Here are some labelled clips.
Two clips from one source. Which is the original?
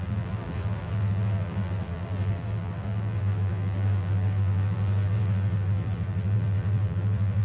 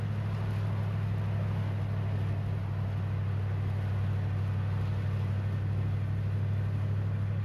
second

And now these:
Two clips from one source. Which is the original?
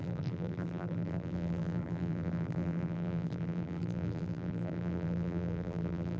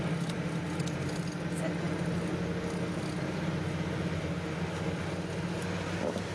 second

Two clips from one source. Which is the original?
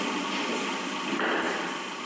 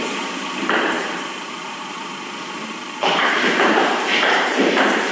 first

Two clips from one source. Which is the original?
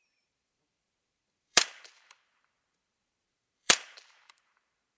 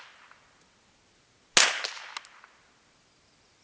second